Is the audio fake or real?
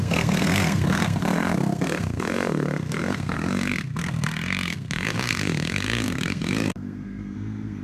fake